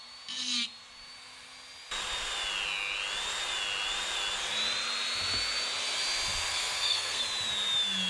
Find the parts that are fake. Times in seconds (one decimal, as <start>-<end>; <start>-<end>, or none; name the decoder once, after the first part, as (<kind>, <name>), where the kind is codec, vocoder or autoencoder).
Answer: 6.5-7.2 (codec, SNAC)